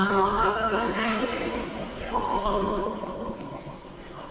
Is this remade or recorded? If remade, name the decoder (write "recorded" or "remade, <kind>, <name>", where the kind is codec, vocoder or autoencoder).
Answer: remade, codec, SNAC